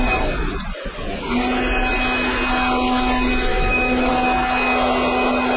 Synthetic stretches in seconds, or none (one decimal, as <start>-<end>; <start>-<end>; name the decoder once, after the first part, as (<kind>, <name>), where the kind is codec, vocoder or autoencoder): 3.5-4.1 (autoencoder, DAC-VAE)